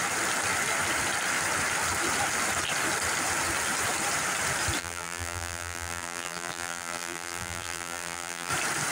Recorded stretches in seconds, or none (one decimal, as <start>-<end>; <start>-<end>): 0.0-4.8; 8.5-8.9